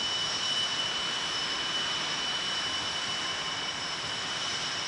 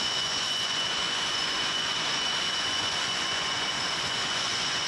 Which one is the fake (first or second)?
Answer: second